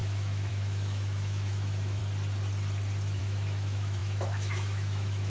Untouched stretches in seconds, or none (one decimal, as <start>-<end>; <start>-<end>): 2.0-3.2